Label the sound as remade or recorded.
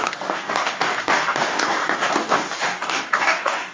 remade